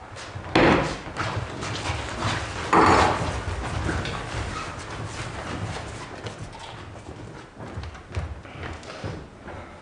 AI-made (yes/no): no